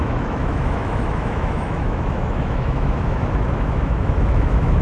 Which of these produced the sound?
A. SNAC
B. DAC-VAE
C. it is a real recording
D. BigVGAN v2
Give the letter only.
B